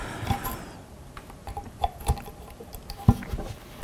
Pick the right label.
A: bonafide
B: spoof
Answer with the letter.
A